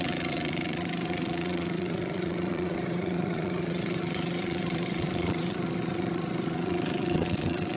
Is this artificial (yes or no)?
yes